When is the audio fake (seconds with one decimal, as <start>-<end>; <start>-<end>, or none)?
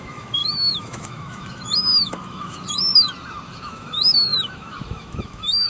0.0-2.9; 3.5-5.7